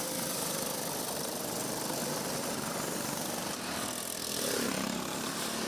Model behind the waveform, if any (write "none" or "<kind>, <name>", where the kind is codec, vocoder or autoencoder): vocoder, BigVGAN v2